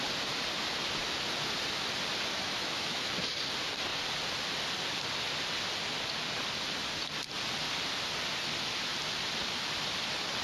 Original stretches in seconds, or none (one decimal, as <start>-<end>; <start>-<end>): 0.0-2.3; 3.1-10.4